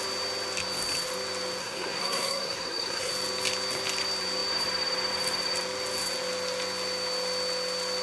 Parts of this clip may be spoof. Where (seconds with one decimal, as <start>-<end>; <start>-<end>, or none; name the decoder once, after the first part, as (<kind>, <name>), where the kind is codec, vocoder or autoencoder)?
1.6-3.1 (codec, SNAC)